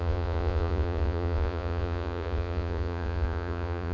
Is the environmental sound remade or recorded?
remade